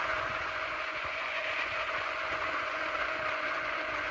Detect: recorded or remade remade